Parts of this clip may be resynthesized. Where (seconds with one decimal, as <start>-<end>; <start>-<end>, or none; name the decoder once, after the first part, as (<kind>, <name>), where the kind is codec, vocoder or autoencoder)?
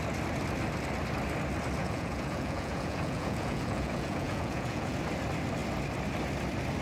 1.8-5.0 (vocoder, Vocos)